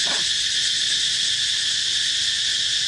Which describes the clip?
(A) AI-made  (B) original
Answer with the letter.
B